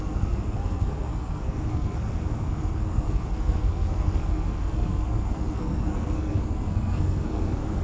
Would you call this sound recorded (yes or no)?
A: no